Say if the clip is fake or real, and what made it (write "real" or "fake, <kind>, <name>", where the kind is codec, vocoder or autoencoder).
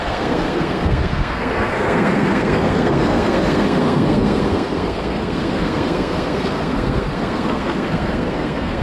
fake, codec, SNAC